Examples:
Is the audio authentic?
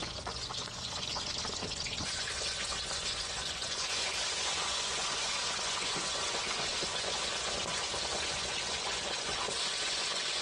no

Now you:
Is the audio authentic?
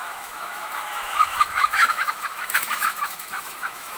no